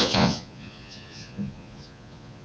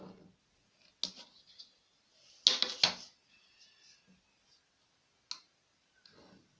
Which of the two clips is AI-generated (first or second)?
first